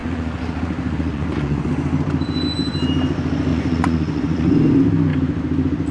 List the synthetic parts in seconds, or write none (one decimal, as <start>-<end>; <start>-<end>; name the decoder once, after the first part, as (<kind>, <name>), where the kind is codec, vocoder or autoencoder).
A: 0.0-1.7 (vocoder, Vocos); 3.5-4.5